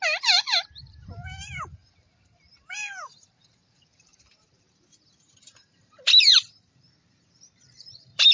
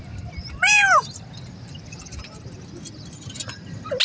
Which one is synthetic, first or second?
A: first